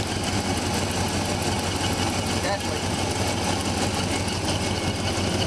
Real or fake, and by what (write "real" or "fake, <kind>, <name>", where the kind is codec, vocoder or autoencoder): real